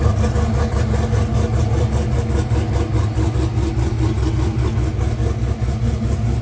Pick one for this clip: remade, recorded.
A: recorded